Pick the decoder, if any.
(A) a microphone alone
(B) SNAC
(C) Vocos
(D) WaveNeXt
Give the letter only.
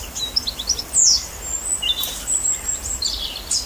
A